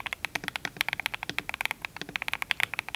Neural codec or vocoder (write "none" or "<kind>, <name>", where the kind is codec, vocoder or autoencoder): none